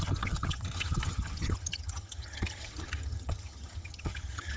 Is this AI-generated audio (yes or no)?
yes